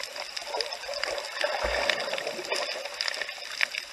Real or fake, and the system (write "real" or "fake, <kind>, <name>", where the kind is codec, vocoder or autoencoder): real